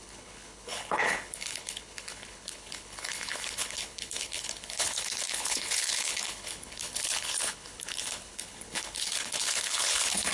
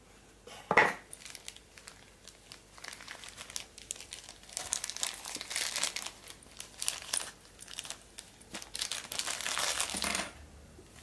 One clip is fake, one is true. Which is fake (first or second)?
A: first